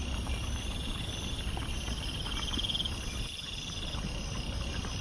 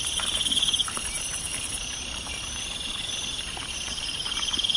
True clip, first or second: first